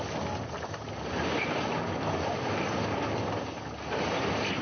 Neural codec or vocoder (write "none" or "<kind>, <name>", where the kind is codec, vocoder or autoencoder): none